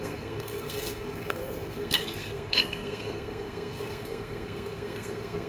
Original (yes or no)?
no